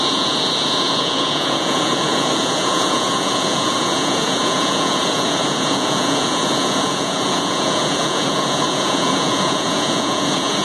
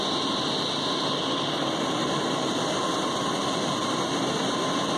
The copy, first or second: first